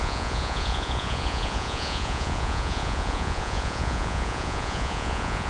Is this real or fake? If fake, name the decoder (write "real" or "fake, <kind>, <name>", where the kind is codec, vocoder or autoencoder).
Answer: fake, vocoder, Vocos